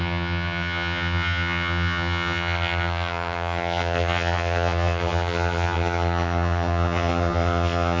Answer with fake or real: fake